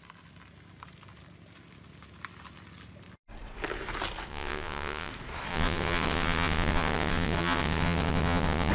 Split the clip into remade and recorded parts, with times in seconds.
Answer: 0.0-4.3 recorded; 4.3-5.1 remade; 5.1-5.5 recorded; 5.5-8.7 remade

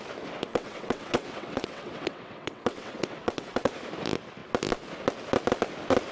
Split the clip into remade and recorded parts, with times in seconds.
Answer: 0.0-0.5 recorded; 0.5-3.7 remade; 3.7-6.1 recorded

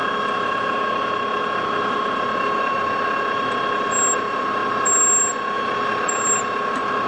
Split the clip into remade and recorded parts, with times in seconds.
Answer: 0.0-7.1 recorded

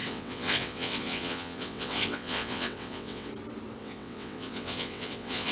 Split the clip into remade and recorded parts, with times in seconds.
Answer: 0.0-3.3 remade; 3.3-3.8 recorded; 3.8-5.5 remade

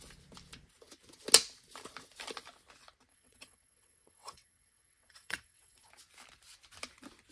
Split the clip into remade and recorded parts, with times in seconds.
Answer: 0.0-3.1 recorded; 3.1-5.9 remade; 5.9-7.3 recorded